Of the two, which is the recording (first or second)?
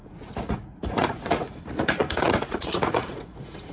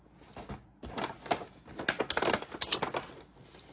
second